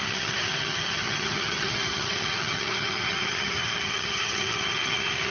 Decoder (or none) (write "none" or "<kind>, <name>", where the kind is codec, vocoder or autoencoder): vocoder, HiFi-GAN